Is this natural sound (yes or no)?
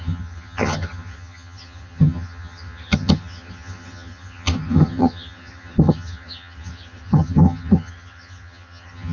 no